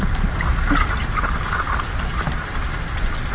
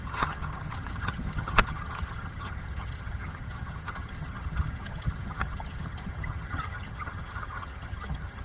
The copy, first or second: second